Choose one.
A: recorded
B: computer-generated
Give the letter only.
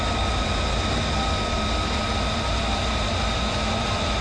A